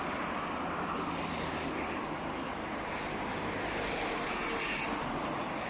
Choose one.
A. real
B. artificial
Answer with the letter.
A